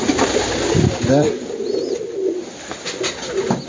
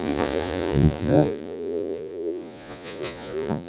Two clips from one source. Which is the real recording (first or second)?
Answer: first